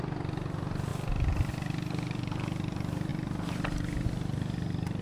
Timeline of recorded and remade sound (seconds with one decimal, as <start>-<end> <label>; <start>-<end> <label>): 0.0-5.0 recorded